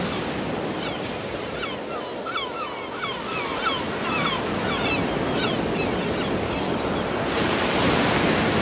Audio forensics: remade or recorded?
recorded